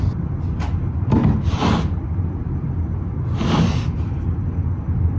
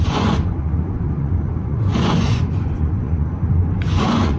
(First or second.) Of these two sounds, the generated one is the second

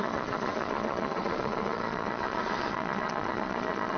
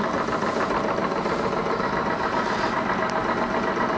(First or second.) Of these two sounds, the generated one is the first